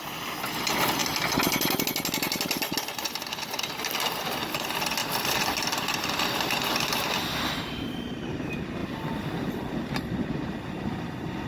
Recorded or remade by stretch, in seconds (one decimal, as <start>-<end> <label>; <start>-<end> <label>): 0.0-1.0 recorded; 1.0-1.8 remade; 1.8-5.0 recorded; 5.0-7.9 remade; 7.9-8.8 recorded; 8.8-9.5 remade; 9.5-11.5 recorded